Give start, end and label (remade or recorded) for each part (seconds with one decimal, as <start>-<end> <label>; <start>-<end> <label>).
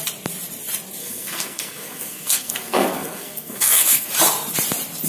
0.0-1.0 recorded; 1.0-4.1 remade; 4.1-5.1 recorded